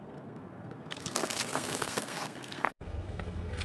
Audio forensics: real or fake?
fake